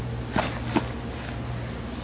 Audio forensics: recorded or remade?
recorded